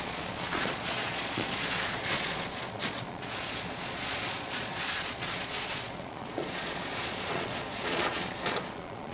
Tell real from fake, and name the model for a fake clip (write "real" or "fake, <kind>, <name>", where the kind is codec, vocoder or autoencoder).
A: fake, vocoder, Vocos